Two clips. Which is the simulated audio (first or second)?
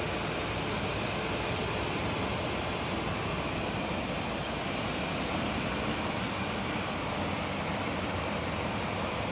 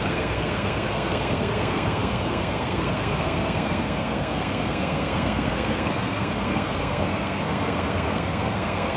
second